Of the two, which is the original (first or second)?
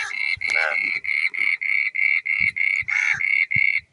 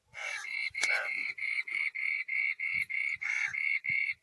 first